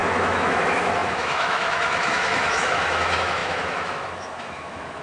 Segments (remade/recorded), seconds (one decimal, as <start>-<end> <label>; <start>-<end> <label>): 0.0-5.0 remade